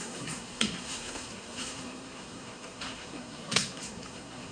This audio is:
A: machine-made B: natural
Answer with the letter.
A